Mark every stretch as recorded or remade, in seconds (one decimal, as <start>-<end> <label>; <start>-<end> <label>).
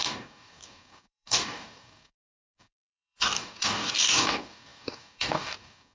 0.0-5.9 remade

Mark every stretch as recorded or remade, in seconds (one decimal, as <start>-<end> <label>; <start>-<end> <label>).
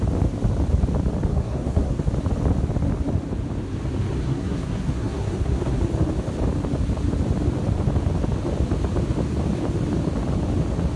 0.0-1.3 recorded; 1.3-2.0 remade; 2.0-4.2 recorded; 4.2-5.8 remade; 5.8-11.0 recorded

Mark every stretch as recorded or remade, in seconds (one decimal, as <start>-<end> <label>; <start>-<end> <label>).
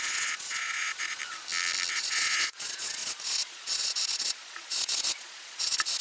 0.0-1.2 remade; 1.2-1.9 recorded; 1.9-6.0 remade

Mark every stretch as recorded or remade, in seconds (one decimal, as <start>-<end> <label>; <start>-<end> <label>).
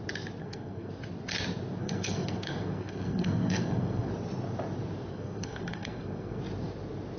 0.0-0.4 recorded; 0.4-0.9 remade; 0.9-1.8 recorded; 1.8-4.1 remade; 4.1-5.1 recorded; 5.1-6.4 remade; 6.4-7.2 recorded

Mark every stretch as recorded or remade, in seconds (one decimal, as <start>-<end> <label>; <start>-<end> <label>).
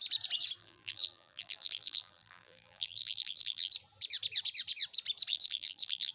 0.0-0.6 recorded; 0.6-3.7 remade; 3.7-5.3 recorded; 5.3-6.1 remade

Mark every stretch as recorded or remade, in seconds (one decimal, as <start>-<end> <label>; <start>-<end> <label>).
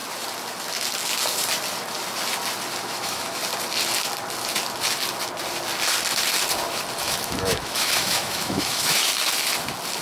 0.0-2.8 recorded; 2.8-3.4 remade; 3.4-7.0 recorded; 7.0-9.1 remade; 9.1-10.0 recorded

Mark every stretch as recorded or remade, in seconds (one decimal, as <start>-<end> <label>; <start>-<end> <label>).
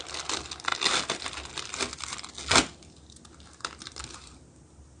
0.0-5.0 recorded